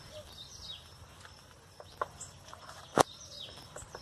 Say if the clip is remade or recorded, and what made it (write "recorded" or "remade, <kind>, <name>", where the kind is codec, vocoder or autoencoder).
recorded